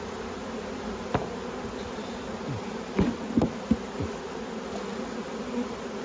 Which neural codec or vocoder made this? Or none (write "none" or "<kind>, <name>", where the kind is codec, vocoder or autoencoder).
none